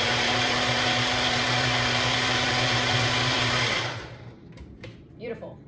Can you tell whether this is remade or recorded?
remade